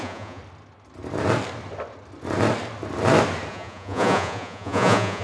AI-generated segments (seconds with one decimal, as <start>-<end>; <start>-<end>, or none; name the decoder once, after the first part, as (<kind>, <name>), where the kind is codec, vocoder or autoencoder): 0.0-0.4 (vocoder, Vocos); 3.5-5.2